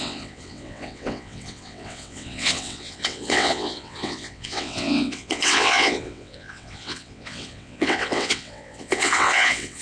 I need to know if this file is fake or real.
fake